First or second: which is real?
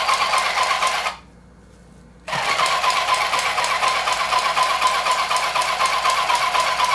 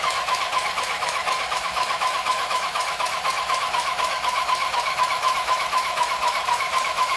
first